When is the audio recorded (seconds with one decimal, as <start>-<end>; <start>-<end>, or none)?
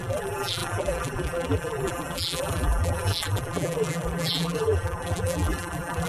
none